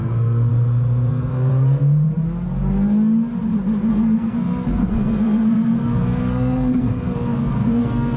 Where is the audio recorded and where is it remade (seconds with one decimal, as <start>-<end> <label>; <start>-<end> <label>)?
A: 0.0-0.5 remade; 0.5-1.1 recorded; 1.1-1.5 remade; 1.5-3.9 recorded; 3.9-8.2 remade